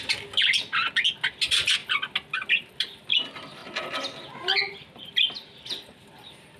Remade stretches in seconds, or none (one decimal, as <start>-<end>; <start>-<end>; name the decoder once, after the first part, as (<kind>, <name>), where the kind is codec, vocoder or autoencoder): none